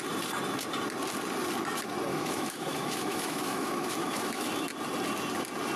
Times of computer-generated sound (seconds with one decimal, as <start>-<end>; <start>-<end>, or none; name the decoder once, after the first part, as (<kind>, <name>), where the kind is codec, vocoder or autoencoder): 2.1-4.5 (autoencoder, DAC-VAE)